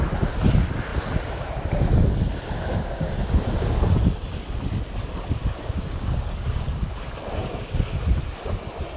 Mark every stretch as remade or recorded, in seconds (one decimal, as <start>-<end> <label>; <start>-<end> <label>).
0.0-2.7 recorded; 2.7-4.2 remade; 4.2-5.4 recorded; 5.4-6.9 remade; 6.9-7.4 recorded; 7.4-8.0 remade; 8.0-9.0 recorded